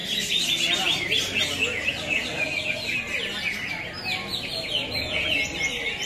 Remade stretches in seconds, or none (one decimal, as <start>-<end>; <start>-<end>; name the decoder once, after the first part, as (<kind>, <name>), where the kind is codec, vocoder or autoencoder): none